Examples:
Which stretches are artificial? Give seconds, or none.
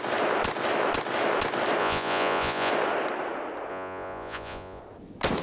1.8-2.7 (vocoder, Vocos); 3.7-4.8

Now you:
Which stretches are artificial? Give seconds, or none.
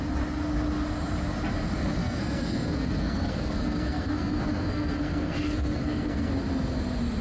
2.0-6.3 (codec, SNAC)